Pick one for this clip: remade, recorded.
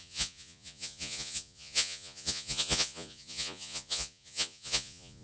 remade